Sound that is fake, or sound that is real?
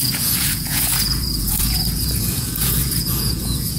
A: fake